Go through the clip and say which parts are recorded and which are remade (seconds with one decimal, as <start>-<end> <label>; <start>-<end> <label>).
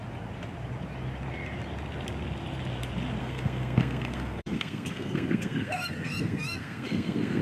0.0-3.2 recorded; 3.2-7.4 remade